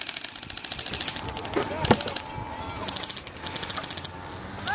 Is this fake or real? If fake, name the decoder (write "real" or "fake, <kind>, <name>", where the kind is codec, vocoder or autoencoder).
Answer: real